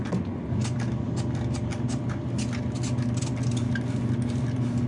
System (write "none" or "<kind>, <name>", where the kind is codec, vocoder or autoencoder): none